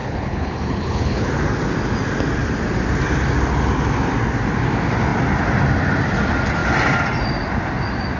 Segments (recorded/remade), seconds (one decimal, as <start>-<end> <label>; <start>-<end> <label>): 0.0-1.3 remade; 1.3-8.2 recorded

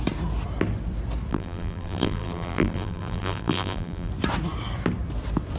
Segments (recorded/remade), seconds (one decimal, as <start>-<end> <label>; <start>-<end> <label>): 0.0-1.3 recorded; 1.3-4.1 remade; 4.1-5.6 recorded

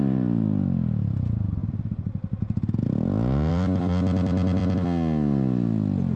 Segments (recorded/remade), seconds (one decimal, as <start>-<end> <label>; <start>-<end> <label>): 0.0-1.6 remade; 1.6-3.5 recorded; 3.5-4.6 remade; 4.6-6.2 recorded

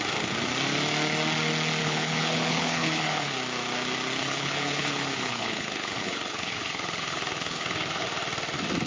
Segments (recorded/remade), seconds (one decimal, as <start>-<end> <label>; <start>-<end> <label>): 0.0-1.8 recorded; 1.8-3.3 remade; 3.3-4.2 recorded; 4.2-8.0 remade; 8.0-8.9 recorded

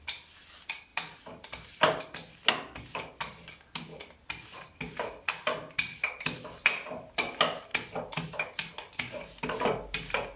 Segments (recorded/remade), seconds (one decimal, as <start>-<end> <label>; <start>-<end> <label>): 0.0-10.4 recorded

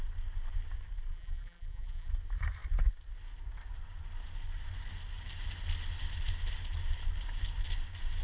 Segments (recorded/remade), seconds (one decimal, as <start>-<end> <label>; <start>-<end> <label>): 0.0-1.1 recorded; 1.1-2.1 remade; 2.1-8.2 recorded

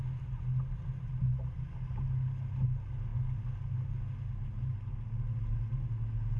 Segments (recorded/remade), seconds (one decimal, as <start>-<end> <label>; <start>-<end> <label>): 0.0-6.4 recorded

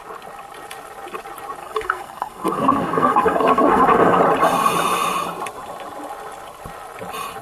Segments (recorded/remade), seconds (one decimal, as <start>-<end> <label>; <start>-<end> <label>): 0.0-1.6 recorded; 1.6-4.2 remade; 4.2-7.4 recorded